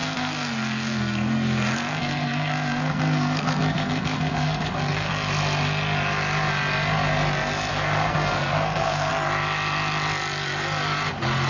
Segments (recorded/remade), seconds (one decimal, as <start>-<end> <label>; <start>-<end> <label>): 0.0-5.1 remade; 5.1-7.7 recorded; 7.7-9.1 remade; 9.1-11.5 recorded